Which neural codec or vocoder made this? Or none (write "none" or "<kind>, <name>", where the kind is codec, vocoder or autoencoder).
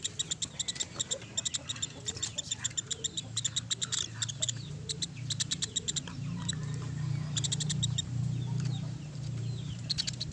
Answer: vocoder, BigVGAN v2